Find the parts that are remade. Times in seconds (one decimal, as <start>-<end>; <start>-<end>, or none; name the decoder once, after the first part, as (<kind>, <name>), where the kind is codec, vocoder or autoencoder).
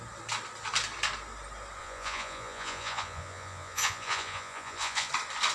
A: 1.8-5.1 (vocoder, Vocos)